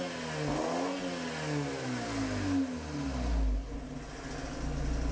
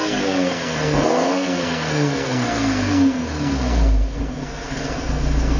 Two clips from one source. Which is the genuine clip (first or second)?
first